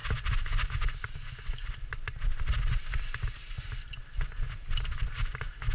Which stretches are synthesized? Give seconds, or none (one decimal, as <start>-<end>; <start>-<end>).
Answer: none